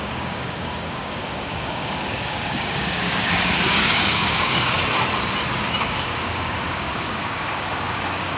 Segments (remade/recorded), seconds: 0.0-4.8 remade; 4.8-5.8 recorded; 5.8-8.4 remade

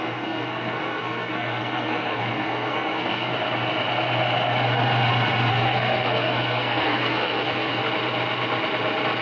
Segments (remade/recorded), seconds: 0.0-3.3 remade; 3.3-5.5 recorded; 5.5-7.8 remade; 7.8-9.2 recorded

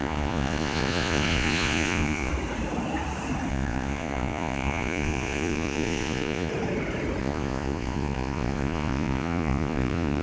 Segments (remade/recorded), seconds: 0.0-2.3 remade; 2.3-3.5 recorded; 3.5-6.5 remade; 6.5-7.2 recorded; 7.2-10.2 remade

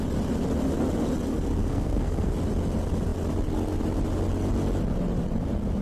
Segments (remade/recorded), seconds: 0.0-1.6 recorded; 1.6-2.3 remade; 2.3-5.8 recorded

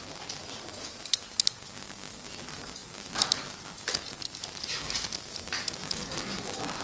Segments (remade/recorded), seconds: 0.0-6.8 recorded

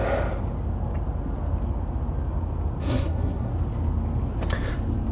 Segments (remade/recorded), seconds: 0.0-2.8 recorded; 2.8-3.5 remade; 3.5-5.1 recorded